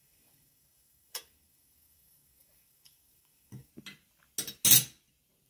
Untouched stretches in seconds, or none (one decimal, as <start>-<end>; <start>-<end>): 3.7-5.5